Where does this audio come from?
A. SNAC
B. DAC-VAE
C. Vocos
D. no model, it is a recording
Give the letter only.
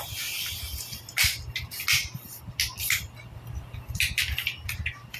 D